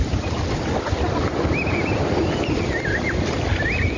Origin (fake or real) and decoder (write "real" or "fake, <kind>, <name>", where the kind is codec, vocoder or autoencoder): real